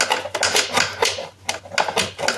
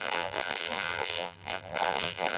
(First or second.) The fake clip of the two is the second